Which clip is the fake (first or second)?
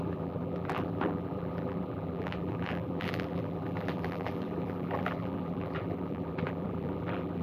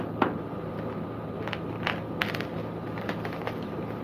first